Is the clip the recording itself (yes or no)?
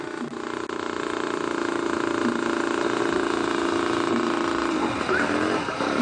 yes